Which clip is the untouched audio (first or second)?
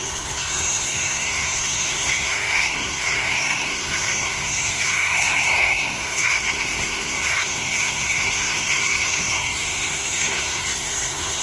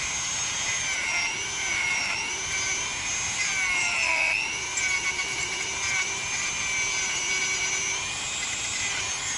second